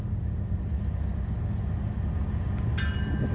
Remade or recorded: recorded